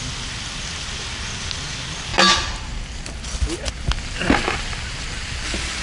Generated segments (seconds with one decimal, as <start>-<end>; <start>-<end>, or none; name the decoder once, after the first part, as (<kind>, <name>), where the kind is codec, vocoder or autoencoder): none